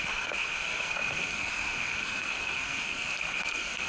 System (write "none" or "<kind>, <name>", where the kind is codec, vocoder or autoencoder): codec, SNAC